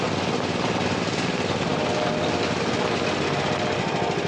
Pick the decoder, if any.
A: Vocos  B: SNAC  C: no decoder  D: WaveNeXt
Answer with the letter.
C